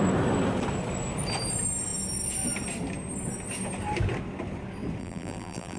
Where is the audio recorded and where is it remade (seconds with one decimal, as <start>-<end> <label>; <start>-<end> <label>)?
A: 0.0-5.0 recorded; 5.0-5.8 remade